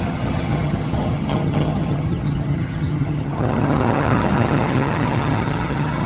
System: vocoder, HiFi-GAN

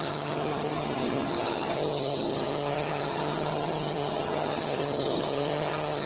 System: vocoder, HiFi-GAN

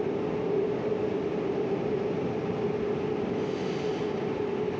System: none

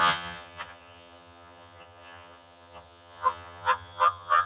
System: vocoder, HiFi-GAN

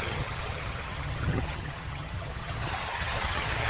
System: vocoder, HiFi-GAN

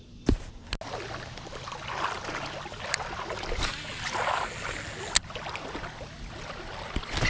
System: none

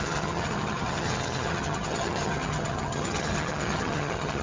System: vocoder, HiFi-GAN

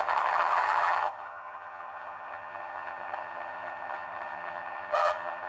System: vocoder, HiFi-GAN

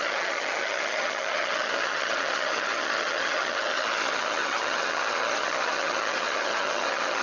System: vocoder, HiFi-GAN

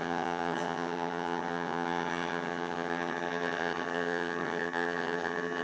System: vocoder, HiFi-GAN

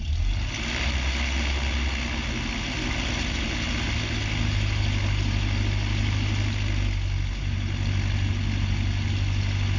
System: none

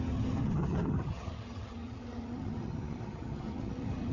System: vocoder, HiFi-GAN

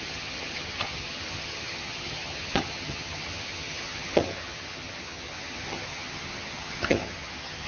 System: vocoder, HiFi-GAN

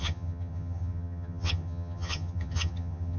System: vocoder, HiFi-GAN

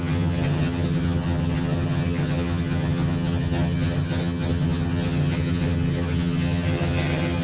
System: vocoder, HiFi-GAN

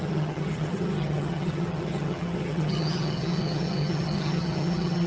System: vocoder, HiFi-GAN